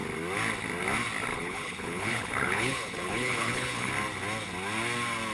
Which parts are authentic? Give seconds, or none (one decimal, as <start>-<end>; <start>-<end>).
0.0-1.3; 3.9-5.3